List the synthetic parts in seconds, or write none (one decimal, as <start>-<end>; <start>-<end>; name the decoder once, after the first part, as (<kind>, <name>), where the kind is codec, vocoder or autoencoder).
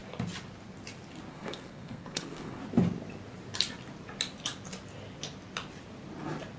1.3-2.6 (codec, SNAC)